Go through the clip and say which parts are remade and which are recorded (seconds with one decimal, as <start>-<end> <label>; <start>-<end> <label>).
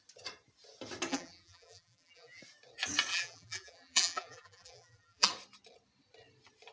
0.0-1.1 recorded; 1.1-2.4 remade; 2.4-3.1 recorded; 3.1-5.3 remade; 5.3-6.7 recorded